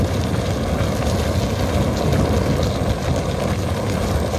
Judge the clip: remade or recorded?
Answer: recorded